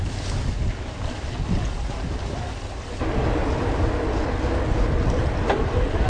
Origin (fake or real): real